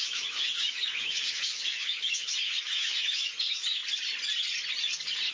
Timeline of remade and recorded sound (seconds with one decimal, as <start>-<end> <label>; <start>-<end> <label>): 0.0-3.8 remade; 3.8-5.3 recorded